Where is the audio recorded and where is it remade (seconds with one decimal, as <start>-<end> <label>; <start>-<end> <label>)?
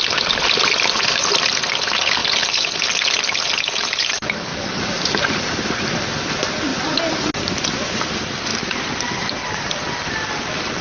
0.0-2.2 recorded; 2.2-2.8 remade; 2.8-4.5 recorded; 4.5-5.5 remade; 5.5-6.7 recorded; 6.7-7.3 remade; 7.3-8.5 recorded; 8.5-10.1 remade; 10.1-10.8 recorded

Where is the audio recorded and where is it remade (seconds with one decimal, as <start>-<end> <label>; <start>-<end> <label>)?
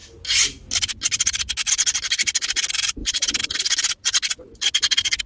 0.0-3.0 recorded; 3.0-3.5 remade; 3.5-5.3 recorded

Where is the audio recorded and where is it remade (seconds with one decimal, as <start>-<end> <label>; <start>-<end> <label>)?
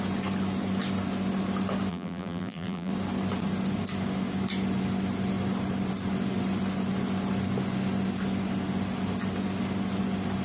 0.0-1.9 recorded; 1.9-2.9 remade; 2.9-10.4 recorded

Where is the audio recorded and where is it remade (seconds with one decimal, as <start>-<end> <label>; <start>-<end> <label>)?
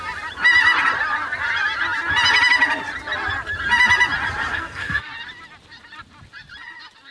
0.0-4.5 recorded; 4.5-5.1 remade; 5.1-7.1 recorded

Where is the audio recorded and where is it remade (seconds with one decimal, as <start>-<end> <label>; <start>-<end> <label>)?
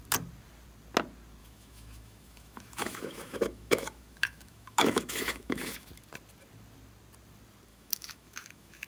0.0-1.4 recorded; 1.4-5.9 remade; 5.9-7.7 recorded; 7.7-8.9 remade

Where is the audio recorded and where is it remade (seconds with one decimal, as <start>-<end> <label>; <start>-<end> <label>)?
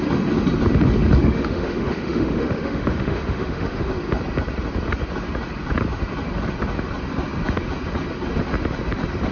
0.0-1.2 recorded; 1.2-3.9 remade; 3.9-9.3 recorded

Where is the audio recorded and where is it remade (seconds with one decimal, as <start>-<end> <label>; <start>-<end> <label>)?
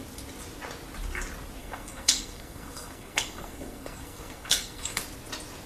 0.0-1.6 recorded; 1.6-5.0 remade; 5.0-5.7 recorded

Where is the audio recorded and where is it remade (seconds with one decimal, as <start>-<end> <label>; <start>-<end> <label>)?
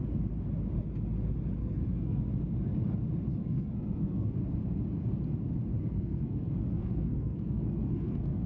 0.0-1.6 recorded; 1.6-2.2 remade; 2.2-3.4 recorded; 3.4-4.4 remade; 4.4-5.8 recorded; 5.8-8.5 remade